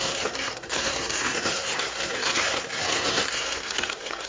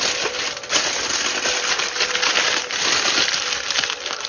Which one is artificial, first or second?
first